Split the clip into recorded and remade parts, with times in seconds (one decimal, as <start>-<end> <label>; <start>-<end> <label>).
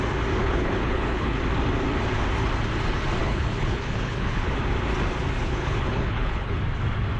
0.0-0.4 recorded; 0.4-1.4 remade; 1.4-3.2 recorded; 3.2-4.6 remade; 4.6-5.4 recorded; 5.4-6.6 remade; 6.6-7.2 recorded